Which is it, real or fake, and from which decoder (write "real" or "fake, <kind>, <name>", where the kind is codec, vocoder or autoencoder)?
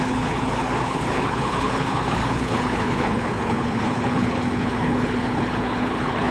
fake, codec, HILCodec